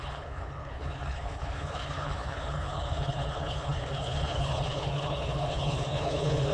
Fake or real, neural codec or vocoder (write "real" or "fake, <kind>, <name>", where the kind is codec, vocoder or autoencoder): fake, codec, HILCodec